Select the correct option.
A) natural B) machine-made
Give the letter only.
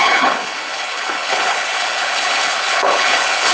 B